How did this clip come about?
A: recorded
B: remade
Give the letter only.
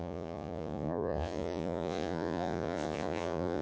B